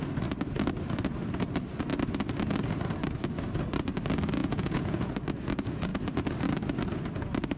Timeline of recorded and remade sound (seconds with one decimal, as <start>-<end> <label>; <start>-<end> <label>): 0.0-4.4 recorded; 4.4-5.1 remade; 5.1-7.6 recorded